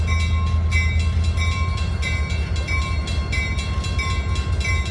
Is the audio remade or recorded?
recorded